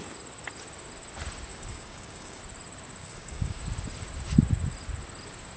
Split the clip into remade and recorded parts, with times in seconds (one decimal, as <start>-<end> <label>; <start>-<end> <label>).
0.0-1.5 recorded; 1.5-2.4 remade; 2.4-3.0 recorded; 3.0-3.6 remade; 3.6-5.6 recorded